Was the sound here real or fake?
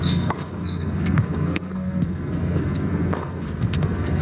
fake